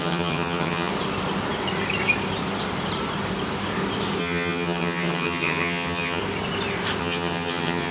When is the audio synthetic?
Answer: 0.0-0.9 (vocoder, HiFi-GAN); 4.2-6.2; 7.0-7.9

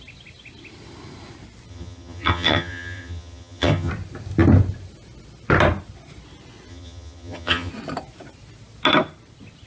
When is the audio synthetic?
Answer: 1.7-3.9 (vocoder, HiFi-GAN); 6.7-7.7

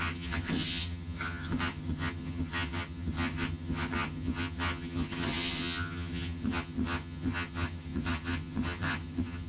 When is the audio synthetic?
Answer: 0.0-9.5 (vocoder, HiFi-GAN)

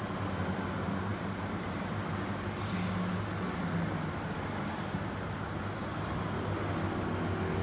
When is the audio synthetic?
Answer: none

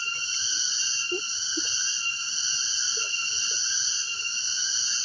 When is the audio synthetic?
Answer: none

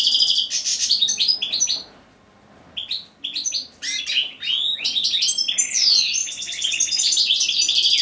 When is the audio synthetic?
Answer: none

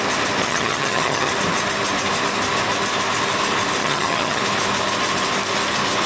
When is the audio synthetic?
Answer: 0.4-1.3 (vocoder, HiFi-GAN); 3.8-4.4